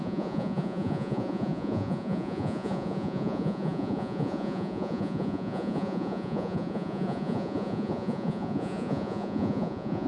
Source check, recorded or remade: remade